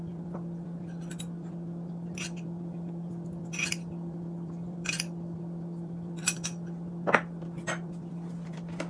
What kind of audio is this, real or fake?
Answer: real